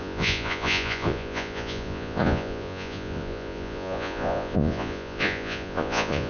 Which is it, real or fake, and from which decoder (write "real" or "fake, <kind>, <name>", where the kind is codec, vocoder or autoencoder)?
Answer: fake, vocoder, Vocos